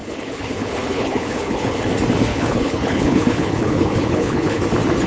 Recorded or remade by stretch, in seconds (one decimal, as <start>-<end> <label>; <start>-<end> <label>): 0.0-1.8 remade; 1.8-2.3 recorded; 2.3-4.6 remade; 4.6-5.1 recorded